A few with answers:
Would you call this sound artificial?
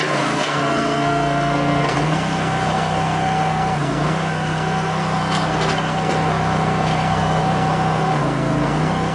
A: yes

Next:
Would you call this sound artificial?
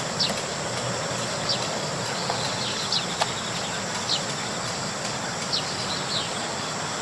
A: no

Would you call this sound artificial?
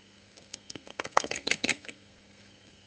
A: yes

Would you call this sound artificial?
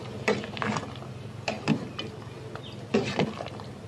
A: no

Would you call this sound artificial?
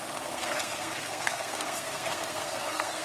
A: yes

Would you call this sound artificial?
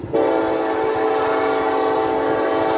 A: no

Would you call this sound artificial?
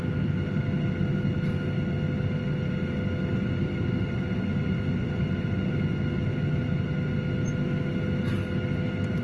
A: no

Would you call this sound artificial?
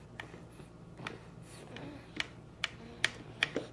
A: no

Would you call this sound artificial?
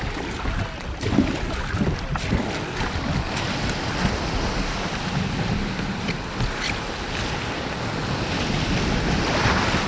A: no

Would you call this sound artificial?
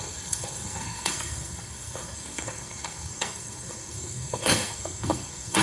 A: yes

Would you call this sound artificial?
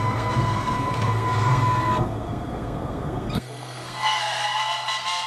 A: yes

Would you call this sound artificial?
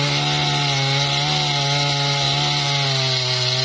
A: no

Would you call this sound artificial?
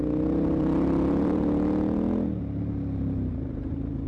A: no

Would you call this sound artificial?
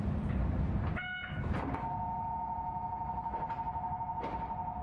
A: no